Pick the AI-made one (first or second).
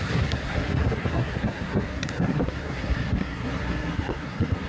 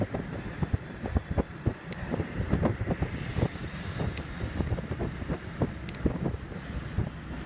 first